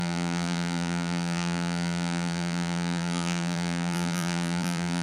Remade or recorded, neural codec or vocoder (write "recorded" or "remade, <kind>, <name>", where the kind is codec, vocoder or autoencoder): remade, vocoder, BigVGAN v2